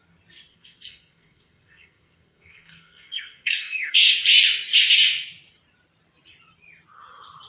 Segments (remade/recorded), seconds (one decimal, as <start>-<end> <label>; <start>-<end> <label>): 0.0-0.5 recorded; 0.5-4.1 remade; 4.1-7.5 recorded